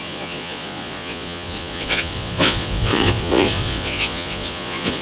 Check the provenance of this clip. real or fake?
fake